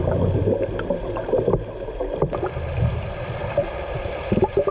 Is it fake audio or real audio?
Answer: fake